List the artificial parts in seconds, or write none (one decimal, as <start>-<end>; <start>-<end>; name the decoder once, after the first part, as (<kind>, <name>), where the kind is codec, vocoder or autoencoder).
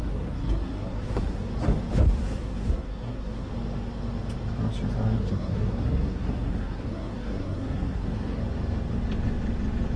0.0-1.5 (codec, SNAC); 2.2-3.5; 5.2-8.4